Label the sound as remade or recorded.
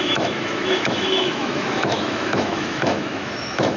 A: remade